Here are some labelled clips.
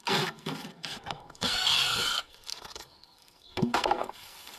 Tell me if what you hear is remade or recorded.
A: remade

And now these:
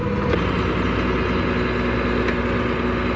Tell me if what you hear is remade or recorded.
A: recorded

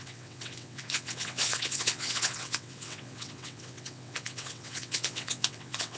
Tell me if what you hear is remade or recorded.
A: remade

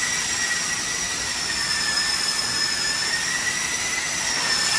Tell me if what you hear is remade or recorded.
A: recorded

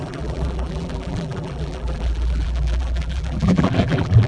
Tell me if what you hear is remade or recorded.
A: remade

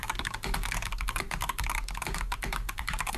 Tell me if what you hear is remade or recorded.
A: remade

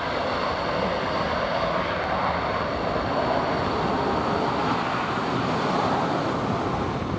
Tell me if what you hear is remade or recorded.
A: recorded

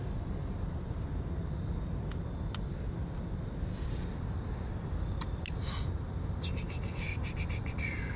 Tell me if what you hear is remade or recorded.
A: recorded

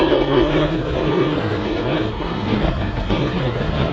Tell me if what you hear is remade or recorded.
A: remade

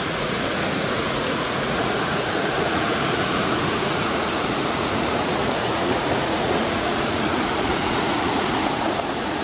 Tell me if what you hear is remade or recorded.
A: remade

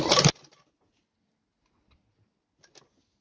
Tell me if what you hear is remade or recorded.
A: recorded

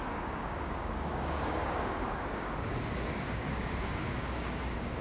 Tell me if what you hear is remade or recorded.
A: remade